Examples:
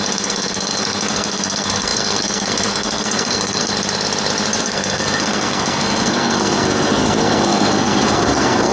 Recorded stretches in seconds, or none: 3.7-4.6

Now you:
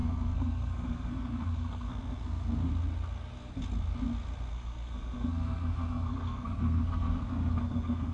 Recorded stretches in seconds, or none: 2.7-4.5